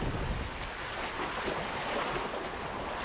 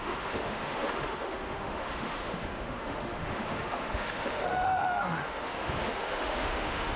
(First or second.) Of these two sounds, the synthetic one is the second